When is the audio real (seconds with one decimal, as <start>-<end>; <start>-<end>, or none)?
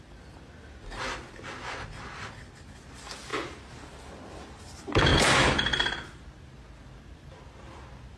0.0-8.2